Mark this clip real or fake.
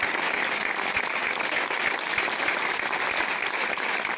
real